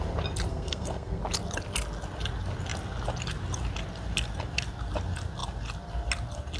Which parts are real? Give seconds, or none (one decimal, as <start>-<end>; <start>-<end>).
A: 0.0-0.5; 1.2-6.6